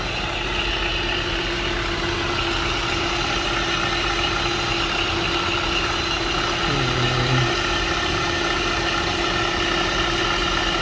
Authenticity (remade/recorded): recorded